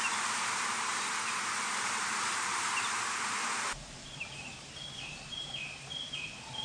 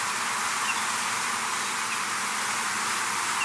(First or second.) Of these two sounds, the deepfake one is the first